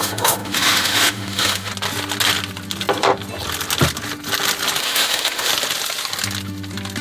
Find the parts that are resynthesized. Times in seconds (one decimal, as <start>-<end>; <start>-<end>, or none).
0.0-1.7; 4.8-5.5